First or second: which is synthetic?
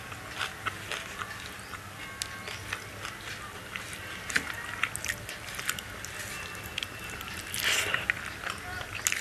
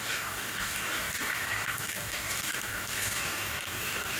second